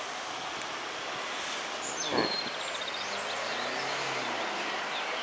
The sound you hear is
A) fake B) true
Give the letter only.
B